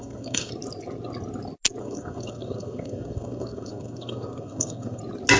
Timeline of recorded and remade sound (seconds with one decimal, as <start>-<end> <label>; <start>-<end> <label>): 0.0-0.5 remade; 0.5-1.8 recorded; 1.8-5.0 remade; 5.0-5.4 recorded